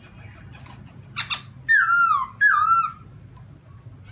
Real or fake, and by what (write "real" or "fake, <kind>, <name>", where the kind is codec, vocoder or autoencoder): real